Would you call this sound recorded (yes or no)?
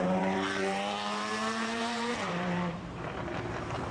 no